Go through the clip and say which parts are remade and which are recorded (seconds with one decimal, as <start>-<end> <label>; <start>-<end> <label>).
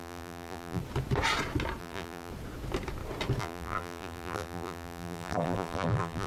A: 0.0-0.8 remade; 0.8-1.8 recorded; 1.8-2.3 remade; 2.3-3.4 recorded; 3.4-6.3 remade